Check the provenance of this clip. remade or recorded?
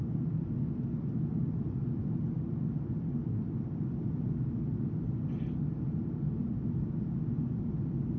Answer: recorded